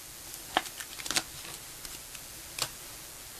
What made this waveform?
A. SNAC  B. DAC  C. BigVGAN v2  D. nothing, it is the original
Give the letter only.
D